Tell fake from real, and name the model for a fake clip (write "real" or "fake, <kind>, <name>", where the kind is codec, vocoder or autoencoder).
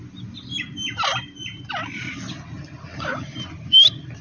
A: real